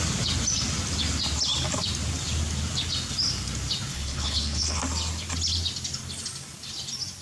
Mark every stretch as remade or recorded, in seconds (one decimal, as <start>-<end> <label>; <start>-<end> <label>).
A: 0.0-3.9 recorded; 3.9-4.8 remade; 4.8-7.2 recorded